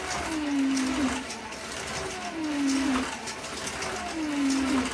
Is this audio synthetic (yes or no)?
no